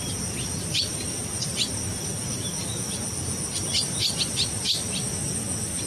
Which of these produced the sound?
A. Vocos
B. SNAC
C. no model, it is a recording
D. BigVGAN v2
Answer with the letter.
C